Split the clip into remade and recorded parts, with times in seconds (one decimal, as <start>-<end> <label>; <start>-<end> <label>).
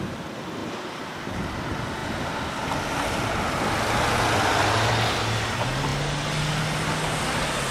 0.0-7.7 recorded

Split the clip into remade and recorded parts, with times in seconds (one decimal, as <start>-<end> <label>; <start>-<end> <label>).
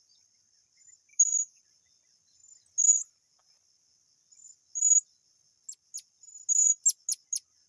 0.0-1.1 recorded; 1.1-1.6 remade; 1.6-7.7 recorded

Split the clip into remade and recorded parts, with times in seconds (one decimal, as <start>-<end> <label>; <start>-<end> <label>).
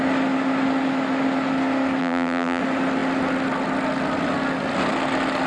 0.0-2.0 recorded; 2.0-2.6 remade; 2.6-5.5 recorded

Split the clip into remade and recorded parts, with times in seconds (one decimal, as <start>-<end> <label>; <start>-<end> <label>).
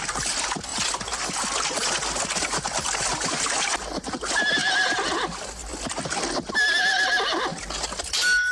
0.0-8.5 recorded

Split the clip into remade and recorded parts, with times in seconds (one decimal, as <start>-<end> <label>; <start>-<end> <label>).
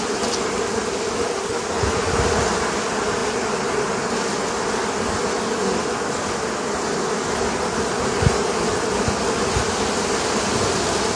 0.0-11.2 recorded